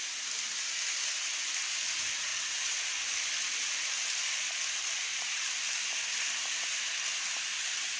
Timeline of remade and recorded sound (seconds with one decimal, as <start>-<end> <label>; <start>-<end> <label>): 0.0-8.0 recorded